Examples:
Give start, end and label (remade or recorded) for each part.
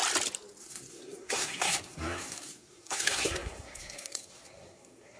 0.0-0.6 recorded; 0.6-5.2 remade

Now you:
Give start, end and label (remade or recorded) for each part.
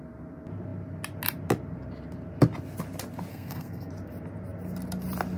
0.0-3.3 recorded; 3.3-3.9 remade; 3.9-5.4 recorded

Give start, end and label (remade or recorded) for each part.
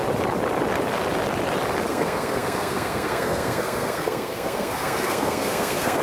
0.0-1.9 recorded; 1.9-6.0 remade